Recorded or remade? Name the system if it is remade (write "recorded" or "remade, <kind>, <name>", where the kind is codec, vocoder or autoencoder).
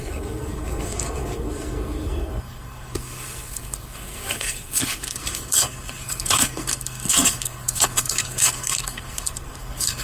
remade, codec, SNAC